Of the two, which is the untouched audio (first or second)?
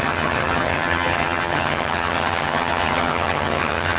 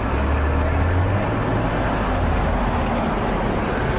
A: second